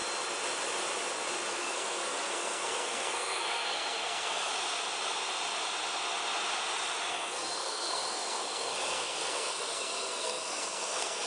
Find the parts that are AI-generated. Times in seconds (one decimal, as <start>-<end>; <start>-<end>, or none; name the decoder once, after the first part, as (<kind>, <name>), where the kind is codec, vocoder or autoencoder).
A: 1.5-4.5 (codec, SNAC); 7.1-11.3